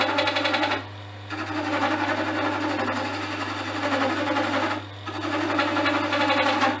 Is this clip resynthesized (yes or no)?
no